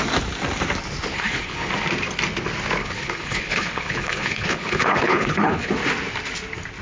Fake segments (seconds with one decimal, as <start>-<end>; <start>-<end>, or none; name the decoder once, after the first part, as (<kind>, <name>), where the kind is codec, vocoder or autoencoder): 1.1-1.7 (codec, HILCodec); 2.8-5.7